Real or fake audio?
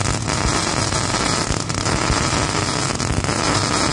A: real